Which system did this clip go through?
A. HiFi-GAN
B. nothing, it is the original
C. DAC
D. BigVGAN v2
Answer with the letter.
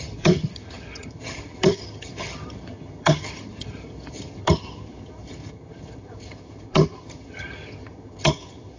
A